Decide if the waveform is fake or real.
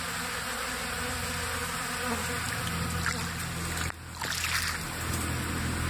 real